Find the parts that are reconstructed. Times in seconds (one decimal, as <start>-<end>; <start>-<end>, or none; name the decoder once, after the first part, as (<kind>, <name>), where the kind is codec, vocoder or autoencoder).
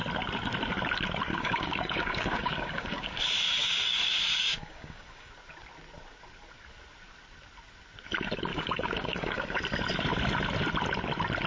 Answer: 1.3-5.3 (codec, DAC); 8.5-9.6